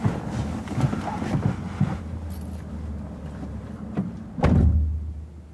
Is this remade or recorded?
recorded